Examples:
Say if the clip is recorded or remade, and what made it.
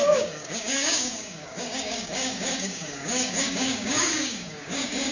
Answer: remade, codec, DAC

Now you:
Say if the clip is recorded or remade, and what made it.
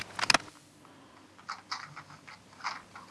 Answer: recorded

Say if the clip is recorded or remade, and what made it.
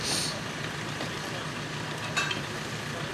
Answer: recorded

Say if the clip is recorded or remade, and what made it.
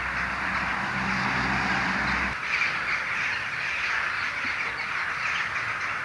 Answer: recorded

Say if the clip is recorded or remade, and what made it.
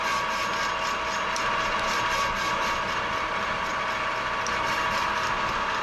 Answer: recorded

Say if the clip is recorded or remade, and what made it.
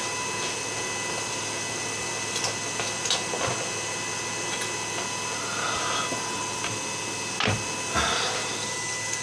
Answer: recorded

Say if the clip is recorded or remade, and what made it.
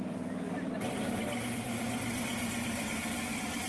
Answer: remade, vocoder, BigVGAN v2